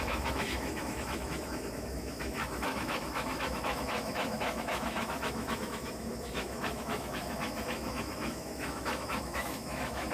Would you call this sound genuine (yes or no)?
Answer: no